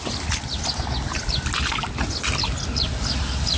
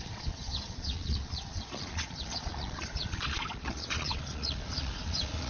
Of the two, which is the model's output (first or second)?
second